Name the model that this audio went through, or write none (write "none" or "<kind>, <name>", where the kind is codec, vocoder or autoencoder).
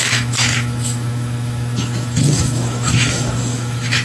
autoencoder, DAC-VAE